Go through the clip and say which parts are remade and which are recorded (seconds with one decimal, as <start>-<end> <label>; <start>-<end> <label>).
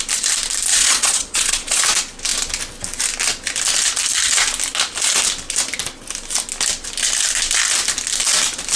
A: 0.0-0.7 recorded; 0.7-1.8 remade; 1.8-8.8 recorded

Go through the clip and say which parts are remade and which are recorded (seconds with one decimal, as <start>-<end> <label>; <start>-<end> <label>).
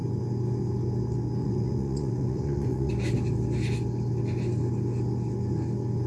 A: 0.0-1.4 recorded; 1.4-2.9 remade; 2.9-6.1 recorded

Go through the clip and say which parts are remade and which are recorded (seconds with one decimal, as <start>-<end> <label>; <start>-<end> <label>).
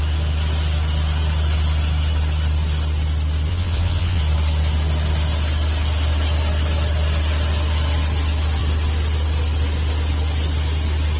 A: 0.0-3.5 recorded; 3.5-4.2 remade; 4.2-11.2 recorded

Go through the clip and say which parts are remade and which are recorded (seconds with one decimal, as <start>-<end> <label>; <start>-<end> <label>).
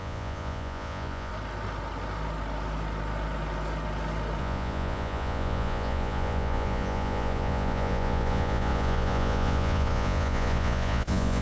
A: 0.0-1.3 remade; 1.3-4.4 recorded; 4.4-11.4 remade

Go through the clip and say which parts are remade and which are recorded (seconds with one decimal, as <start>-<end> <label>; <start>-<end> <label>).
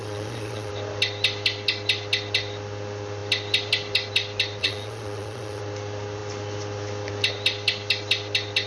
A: 0.0-0.7 remade; 0.7-4.6 recorded; 4.6-5.6 remade; 5.6-8.7 recorded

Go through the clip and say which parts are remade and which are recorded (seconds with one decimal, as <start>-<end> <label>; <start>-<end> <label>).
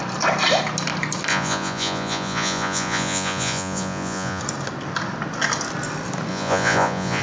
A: 0.0-1.3 recorded; 1.3-4.4 remade; 4.4-6.3 recorded; 6.3-7.2 remade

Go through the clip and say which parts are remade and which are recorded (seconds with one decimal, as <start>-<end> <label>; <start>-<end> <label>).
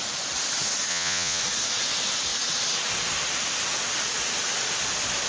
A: 0.0-0.9 recorded; 0.9-1.4 remade; 1.4-5.3 recorded